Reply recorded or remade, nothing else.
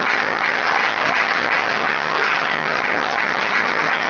remade